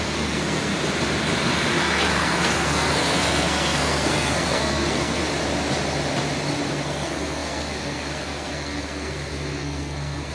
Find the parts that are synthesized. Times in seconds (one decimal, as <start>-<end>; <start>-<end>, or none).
0.0-0.7; 1.8-5.2; 6.7-10.3